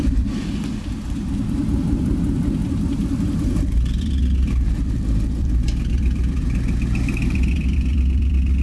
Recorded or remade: remade